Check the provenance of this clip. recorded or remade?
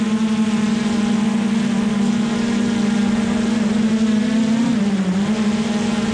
recorded